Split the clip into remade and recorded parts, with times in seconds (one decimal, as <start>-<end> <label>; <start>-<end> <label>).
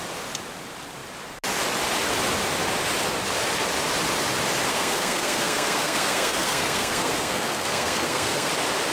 0.0-4.7 recorded; 4.7-8.5 remade; 8.5-8.9 recorded